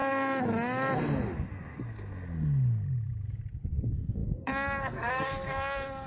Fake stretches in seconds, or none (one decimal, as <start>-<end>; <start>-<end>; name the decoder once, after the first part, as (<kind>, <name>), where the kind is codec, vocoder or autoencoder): 3.7-6.1 (codec, SNAC)